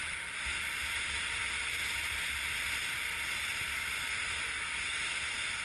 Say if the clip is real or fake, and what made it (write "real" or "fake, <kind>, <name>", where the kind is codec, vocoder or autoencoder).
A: real